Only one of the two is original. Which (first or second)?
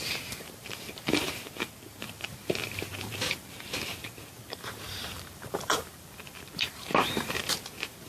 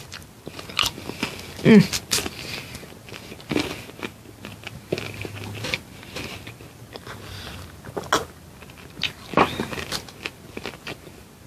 second